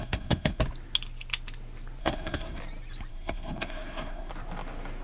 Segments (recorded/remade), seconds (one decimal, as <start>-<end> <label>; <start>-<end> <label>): 0.0-0.6 remade; 0.6-2.0 recorded; 2.0-2.6 remade; 2.6-3.1 recorded; 3.1-4.3 remade; 4.3-5.0 recorded